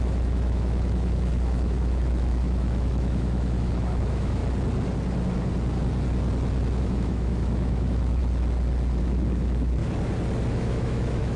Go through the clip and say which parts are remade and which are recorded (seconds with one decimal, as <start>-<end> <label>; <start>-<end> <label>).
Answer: 0.0-4.4 remade; 4.4-6.8 recorded; 6.8-8.2 remade; 8.2-9.0 recorded; 9.0-9.8 remade; 9.8-10.5 recorded; 10.5-11.4 remade